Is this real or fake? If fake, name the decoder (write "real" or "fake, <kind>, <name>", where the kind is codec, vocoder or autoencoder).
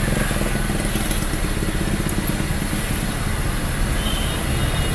real